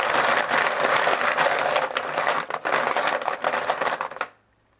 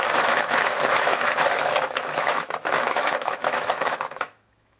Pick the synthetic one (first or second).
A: second